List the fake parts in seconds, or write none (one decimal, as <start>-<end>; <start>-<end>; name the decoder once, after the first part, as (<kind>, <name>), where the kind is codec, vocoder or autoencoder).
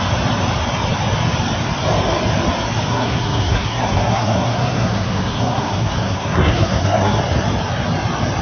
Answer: 2.9-7.2 (codec, SNAC)